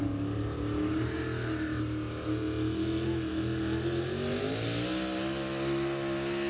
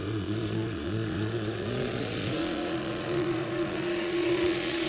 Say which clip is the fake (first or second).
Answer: second